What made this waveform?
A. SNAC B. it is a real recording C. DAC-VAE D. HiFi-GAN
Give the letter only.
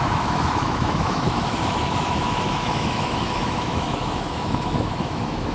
C